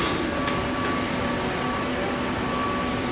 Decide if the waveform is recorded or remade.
recorded